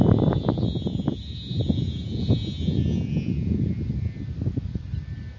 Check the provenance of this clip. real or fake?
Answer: real